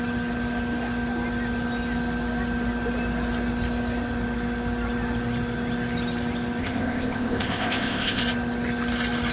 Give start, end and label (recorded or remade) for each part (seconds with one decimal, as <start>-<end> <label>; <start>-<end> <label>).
0.0-6.6 recorded; 6.6-8.2 remade; 8.2-9.3 recorded